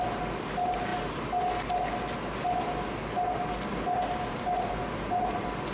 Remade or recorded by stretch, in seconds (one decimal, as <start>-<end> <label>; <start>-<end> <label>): 0.0-5.7 recorded